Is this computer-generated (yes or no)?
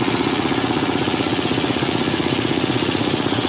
yes